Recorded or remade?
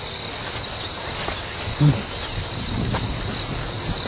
recorded